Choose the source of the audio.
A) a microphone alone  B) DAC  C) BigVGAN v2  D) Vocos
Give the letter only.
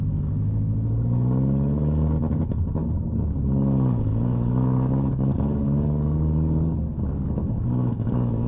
B